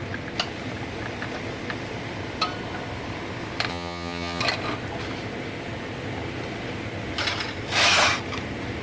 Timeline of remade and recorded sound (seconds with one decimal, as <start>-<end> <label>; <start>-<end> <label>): 0.0-3.7 recorded; 3.7-4.4 remade; 4.4-8.8 recorded